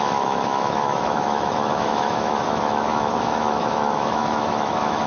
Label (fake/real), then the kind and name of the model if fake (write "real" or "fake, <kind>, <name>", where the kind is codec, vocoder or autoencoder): fake, autoencoder, DAC-VAE